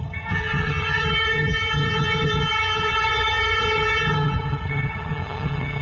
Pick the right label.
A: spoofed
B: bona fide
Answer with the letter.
A